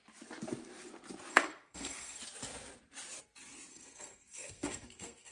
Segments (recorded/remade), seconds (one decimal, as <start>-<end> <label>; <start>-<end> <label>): 0.0-1.3 recorded; 1.3-2.2 remade; 2.2-3.7 recorded; 3.7-5.3 remade